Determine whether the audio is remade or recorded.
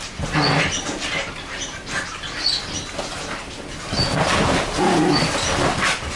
recorded